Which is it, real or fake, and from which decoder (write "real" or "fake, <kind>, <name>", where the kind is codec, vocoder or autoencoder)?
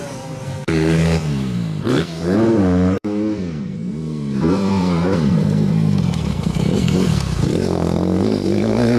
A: fake, codec, SNAC